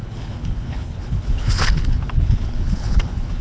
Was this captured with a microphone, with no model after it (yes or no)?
no